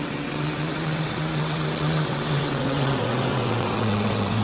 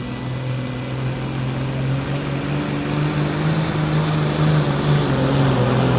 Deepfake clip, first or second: first